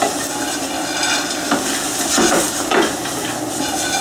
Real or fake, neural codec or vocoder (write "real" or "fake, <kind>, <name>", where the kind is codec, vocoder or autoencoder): real